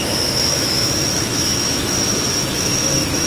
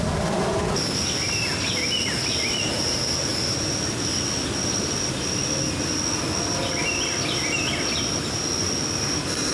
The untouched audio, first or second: second